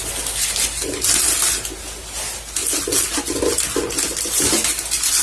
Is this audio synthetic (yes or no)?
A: no